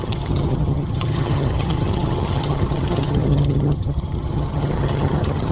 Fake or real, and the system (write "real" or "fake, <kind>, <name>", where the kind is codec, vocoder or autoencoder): fake, vocoder, HiFi-GAN